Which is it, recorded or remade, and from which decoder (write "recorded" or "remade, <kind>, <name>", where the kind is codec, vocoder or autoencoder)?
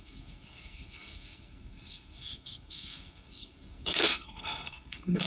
remade, codec, SNAC